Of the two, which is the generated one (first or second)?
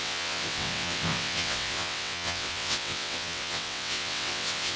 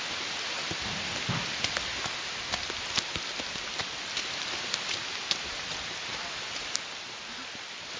first